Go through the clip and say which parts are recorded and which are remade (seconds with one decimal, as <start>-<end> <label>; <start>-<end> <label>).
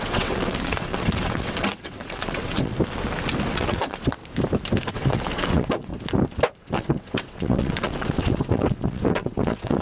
0.0-2.7 remade; 2.7-3.5 recorded; 3.5-4.2 remade; 4.2-4.9 recorded; 4.9-5.9 remade; 5.9-6.6 recorded; 6.6-9.8 remade